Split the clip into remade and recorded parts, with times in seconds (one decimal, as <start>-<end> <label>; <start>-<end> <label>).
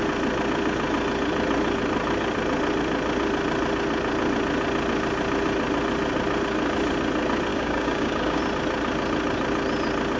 0.0-7.5 recorded; 7.5-8.4 remade; 8.4-10.2 recorded